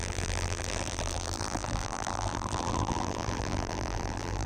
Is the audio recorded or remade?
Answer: remade